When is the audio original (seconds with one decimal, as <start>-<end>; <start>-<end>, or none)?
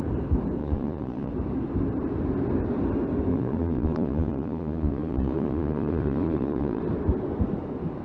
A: 0.0-0.6; 1.3-3.3; 6.8-8.0